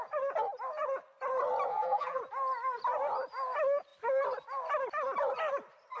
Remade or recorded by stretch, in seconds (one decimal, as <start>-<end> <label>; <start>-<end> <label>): 0.0-1.7 recorded; 1.7-2.2 remade; 2.2-6.0 recorded